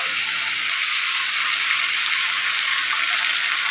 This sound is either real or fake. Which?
real